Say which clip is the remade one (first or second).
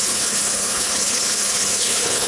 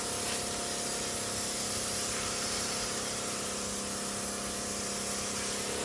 first